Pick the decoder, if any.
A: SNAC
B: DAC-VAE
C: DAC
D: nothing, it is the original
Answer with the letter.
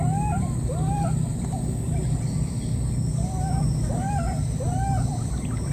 D